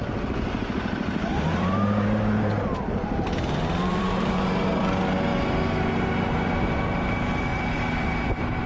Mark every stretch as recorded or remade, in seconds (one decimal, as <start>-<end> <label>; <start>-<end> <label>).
0.0-4.8 remade; 4.8-8.7 recorded